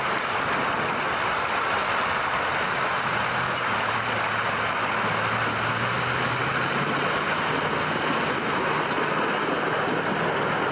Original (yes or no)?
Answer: yes